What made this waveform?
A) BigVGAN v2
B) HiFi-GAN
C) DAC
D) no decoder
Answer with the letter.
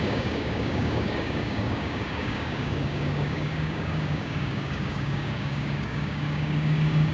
C